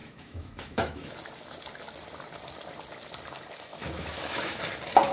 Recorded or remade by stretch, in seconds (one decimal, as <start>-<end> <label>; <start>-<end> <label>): 0.0-1.1 remade; 1.1-3.7 recorded; 3.7-4.6 remade; 4.6-5.1 recorded